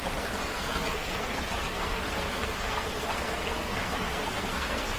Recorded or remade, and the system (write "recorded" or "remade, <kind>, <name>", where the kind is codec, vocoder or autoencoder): remade, codec, SNAC